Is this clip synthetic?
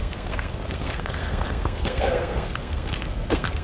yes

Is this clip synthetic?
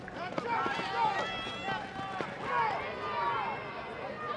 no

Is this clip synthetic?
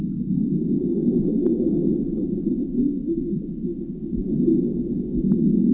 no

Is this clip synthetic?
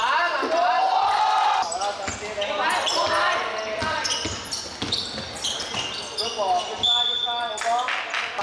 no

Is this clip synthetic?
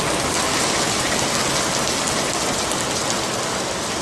no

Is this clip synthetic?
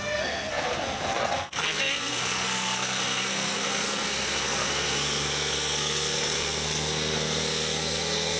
yes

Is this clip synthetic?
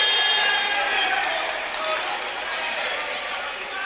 no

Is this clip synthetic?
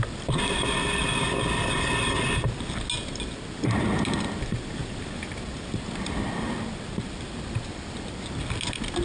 no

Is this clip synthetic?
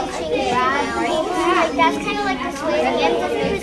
no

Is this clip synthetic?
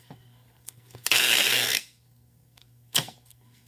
yes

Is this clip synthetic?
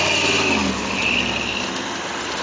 no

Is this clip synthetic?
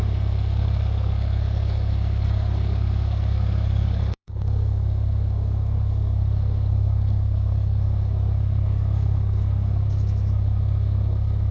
yes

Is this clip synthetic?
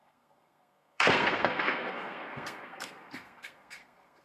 yes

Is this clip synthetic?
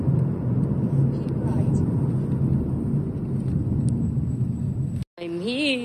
no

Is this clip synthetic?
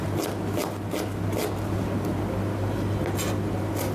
no